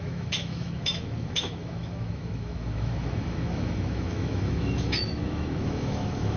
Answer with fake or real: fake